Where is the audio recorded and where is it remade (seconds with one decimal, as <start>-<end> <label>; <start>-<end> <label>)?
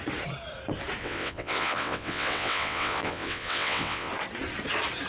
0.0-1.0 recorded; 1.0-4.1 remade; 4.1-5.1 recorded